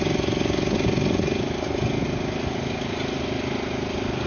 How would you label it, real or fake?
real